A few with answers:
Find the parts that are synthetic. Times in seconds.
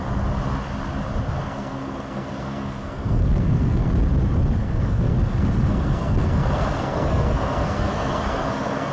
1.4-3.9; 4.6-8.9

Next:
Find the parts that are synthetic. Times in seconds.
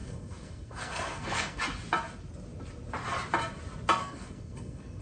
0.0-1.6; 4.0-5.0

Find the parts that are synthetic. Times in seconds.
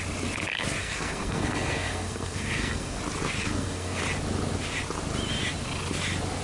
0.8-3.0; 3.4-4.0